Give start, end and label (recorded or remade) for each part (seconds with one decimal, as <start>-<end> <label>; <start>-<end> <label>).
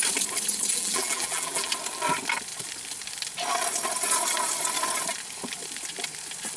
0.0-0.7 recorded; 0.7-1.7 remade; 1.7-6.6 recorded